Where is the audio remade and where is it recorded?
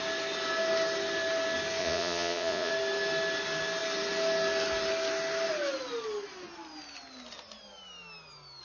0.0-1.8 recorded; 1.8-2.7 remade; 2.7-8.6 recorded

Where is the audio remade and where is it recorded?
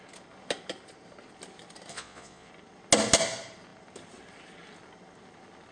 0.0-1.9 recorded; 1.9-2.5 remade; 2.5-5.7 recorded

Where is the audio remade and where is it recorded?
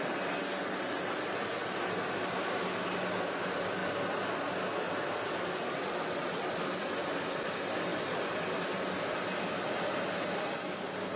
0.0-11.2 recorded